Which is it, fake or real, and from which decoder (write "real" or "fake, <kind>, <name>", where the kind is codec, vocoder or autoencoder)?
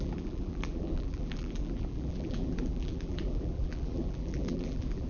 fake, vocoder, BigVGAN v2